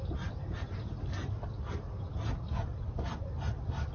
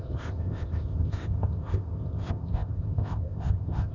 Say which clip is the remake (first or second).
second